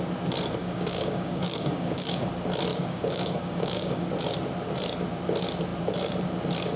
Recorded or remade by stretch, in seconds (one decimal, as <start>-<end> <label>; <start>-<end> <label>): 0.0-0.6 recorded; 0.6-2.3 remade; 2.3-2.7 recorded; 2.7-4.1 remade; 4.1-6.8 recorded